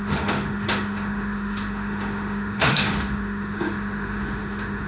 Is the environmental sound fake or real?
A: fake